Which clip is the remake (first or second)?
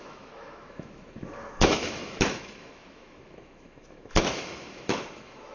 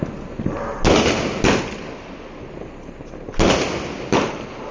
first